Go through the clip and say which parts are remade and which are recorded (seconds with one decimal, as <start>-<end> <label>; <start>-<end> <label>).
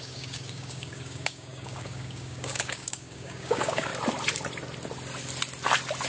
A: 0.0-3.9 remade; 3.9-6.1 recorded